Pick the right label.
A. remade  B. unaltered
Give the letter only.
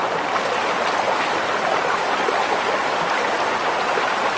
B